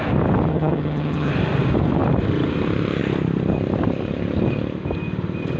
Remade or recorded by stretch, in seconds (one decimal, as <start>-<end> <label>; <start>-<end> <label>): 0.0-0.5 recorded; 0.5-1.3 remade; 1.3-5.6 recorded